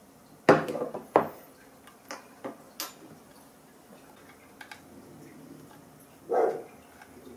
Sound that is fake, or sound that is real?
real